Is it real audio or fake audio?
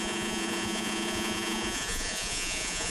fake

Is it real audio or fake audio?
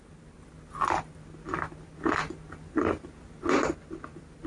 real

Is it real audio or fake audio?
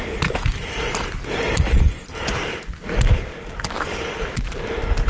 real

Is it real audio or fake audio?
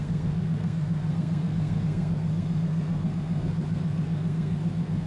fake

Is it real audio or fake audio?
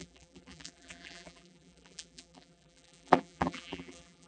fake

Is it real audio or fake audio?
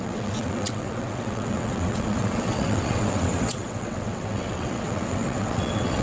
fake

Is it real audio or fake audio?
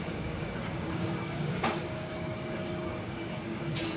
fake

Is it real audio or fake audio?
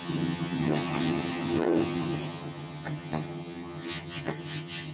fake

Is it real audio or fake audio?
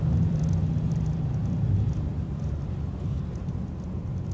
fake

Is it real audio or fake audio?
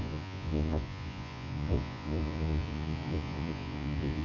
fake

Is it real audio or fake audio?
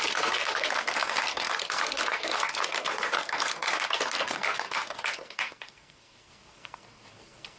fake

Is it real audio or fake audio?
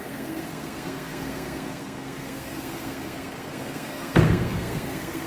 fake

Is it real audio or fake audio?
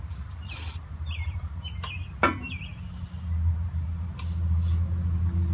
real